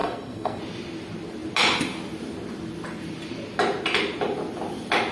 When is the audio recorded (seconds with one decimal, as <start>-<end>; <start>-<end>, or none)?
0.6-5.1